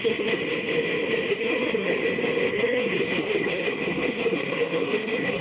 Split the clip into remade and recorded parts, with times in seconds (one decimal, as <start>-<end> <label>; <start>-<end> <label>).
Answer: 0.0-0.4 remade; 0.4-1.3 recorded; 1.3-1.9 remade; 1.9-2.5 recorded; 2.5-5.4 remade